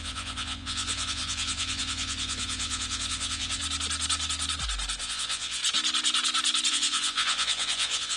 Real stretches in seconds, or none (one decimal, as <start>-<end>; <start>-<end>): 3.6-5.0; 5.6-6.7